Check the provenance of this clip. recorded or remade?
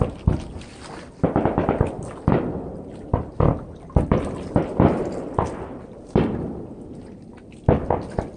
recorded